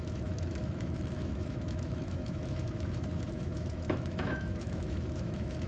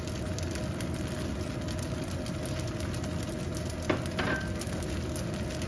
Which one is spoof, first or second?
first